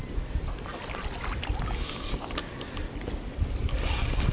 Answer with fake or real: real